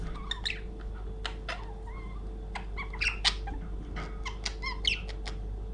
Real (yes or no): yes